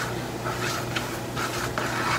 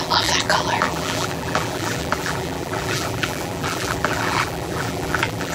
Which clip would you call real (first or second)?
first